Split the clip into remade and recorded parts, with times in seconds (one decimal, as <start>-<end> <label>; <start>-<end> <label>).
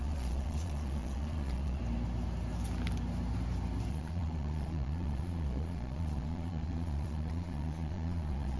0.0-1.8 remade; 1.8-3.9 recorded; 3.9-8.6 remade